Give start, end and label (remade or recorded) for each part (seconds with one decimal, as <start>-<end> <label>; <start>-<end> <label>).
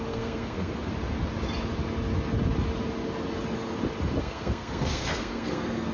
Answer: 0.0-0.9 remade; 0.9-4.2 recorded; 4.2-5.9 remade